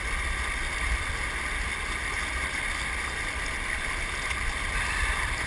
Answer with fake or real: real